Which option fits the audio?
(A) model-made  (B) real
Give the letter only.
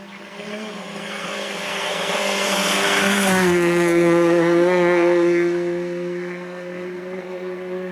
A